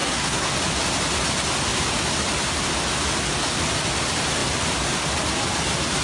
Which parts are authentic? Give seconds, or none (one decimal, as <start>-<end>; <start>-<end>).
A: 0.5-6.0